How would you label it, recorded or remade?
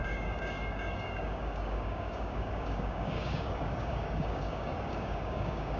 remade